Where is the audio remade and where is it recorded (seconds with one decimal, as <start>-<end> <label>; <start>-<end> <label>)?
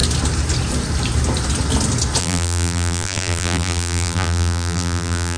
0.0-2.2 recorded; 2.2-5.4 remade